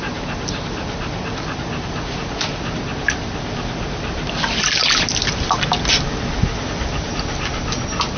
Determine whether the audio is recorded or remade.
recorded